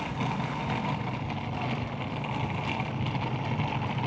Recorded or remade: recorded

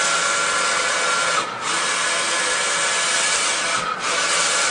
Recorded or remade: recorded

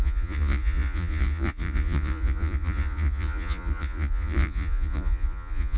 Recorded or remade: remade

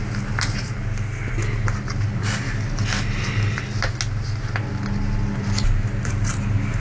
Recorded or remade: recorded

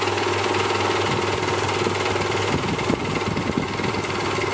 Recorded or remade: recorded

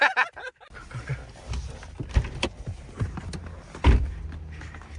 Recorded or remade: recorded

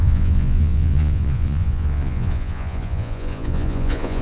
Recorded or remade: remade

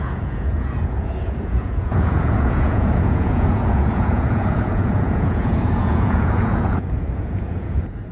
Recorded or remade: remade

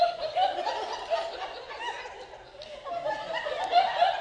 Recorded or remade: recorded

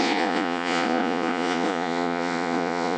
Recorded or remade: remade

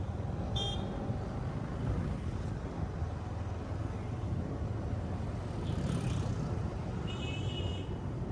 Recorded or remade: recorded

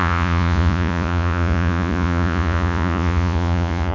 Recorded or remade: remade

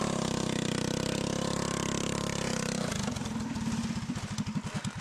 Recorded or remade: recorded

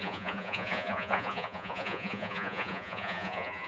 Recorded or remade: remade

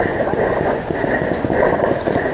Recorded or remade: remade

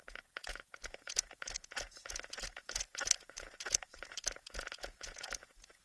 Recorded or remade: remade